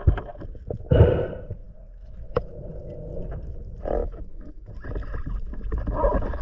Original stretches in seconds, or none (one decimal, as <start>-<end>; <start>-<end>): 0.0-4.0; 4.7-6.4